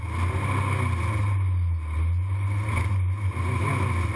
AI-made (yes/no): no